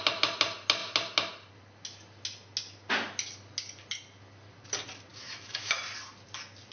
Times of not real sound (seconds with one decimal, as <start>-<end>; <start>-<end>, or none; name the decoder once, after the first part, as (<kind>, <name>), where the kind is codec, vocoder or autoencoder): 5.1-5.8 (autoencoder, DAC-VAE)